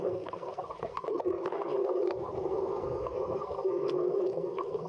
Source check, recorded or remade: remade